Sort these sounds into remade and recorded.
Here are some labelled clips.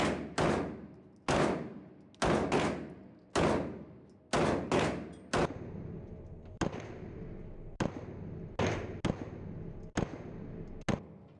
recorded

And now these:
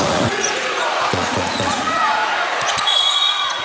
remade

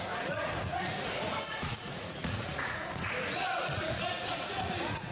remade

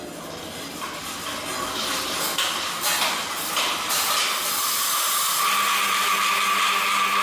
recorded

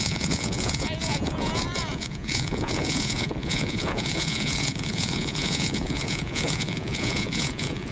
remade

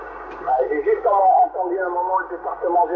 recorded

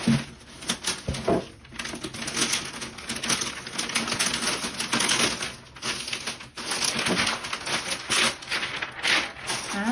recorded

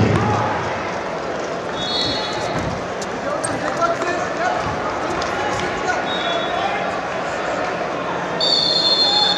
recorded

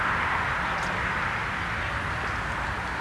recorded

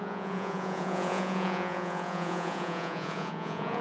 remade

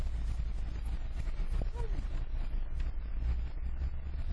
recorded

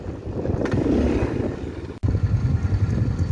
recorded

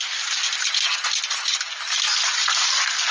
recorded